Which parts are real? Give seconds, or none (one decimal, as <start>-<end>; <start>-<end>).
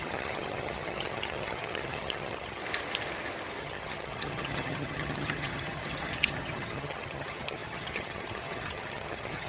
2.6-3.6